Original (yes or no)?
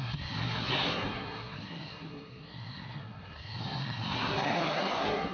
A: no